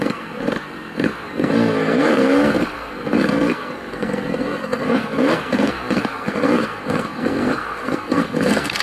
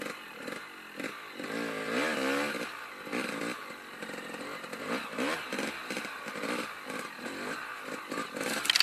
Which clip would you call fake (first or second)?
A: first